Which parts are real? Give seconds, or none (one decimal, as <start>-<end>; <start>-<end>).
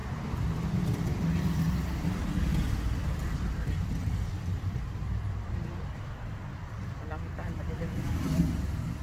0.0-3.2; 8.2-9.0